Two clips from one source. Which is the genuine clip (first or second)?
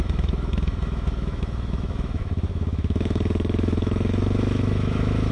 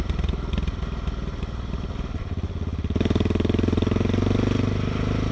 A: second